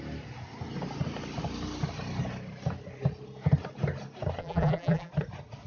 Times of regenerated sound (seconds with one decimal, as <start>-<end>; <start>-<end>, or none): 4.4-5.1